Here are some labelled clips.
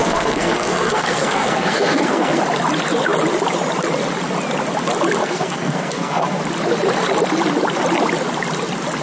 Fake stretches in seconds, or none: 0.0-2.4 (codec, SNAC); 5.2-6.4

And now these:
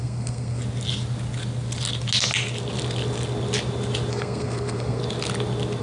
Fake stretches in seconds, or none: 0.0-0.6 (codec, SNAC); 4.1-5.0

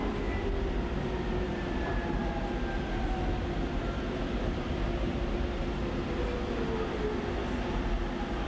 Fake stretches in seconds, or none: 3.6-5.1 (vocoder, BigVGAN v2)

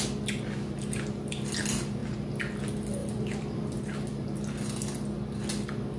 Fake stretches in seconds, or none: 3.0-3.8 (vocoder, BigVGAN v2)

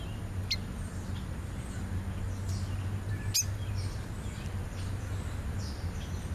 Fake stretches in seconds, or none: none